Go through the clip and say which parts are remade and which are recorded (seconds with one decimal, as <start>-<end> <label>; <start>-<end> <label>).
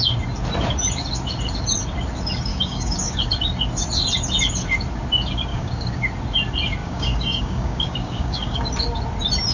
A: 0.0-2.5 recorded; 2.5-3.3 remade; 3.3-5.5 recorded; 5.5-6.1 remade; 6.1-6.8 recorded; 6.8-8.7 remade; 8.7-9.5 recorded